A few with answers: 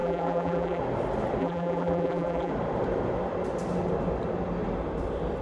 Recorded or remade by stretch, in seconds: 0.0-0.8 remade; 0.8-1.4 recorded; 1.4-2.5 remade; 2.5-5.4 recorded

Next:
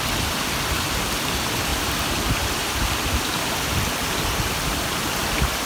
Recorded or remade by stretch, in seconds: 0.0-5.7 recorded

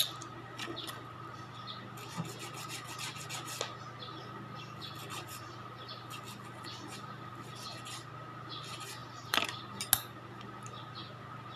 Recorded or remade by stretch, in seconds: 0.0-4.2 recorded; 4.2-7.7 remade; 7.7-9.0 recorded; 9.0-9.9 remade; 9.9-11.6 recorded